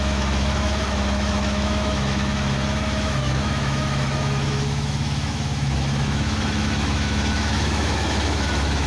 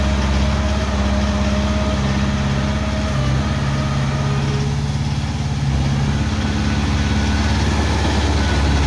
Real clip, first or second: second